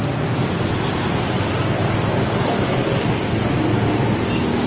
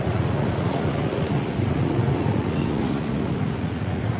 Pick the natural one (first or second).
first